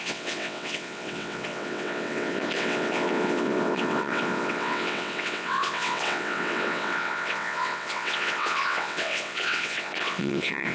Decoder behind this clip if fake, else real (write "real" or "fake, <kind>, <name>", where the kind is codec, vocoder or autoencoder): fake, vocoder, WaveNeXt